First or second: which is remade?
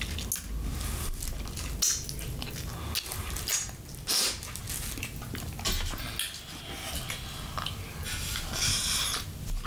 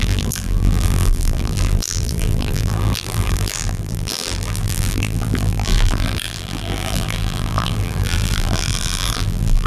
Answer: second